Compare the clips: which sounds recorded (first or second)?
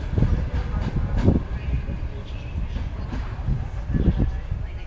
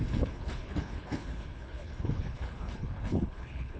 first